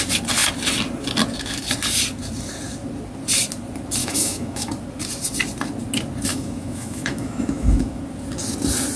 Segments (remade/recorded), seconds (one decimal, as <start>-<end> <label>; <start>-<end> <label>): 0.0-4.0 recorded; 4.0-4.7 remade; 4.7-6.3 recorded; 6.3-8.0 remade; 8.0-9.0 recorded